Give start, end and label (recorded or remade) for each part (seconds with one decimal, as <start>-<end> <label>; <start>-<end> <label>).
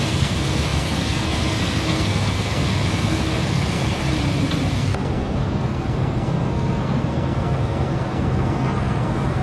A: 0.0-4.0 remade; 4.0-4.7 recorded; 4.7-9.4 remade